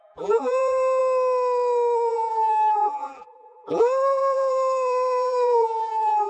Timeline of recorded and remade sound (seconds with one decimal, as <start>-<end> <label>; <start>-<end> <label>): 0.0-1.0 remade; 1.0-2.1 recorded; 2.1-6.3 remade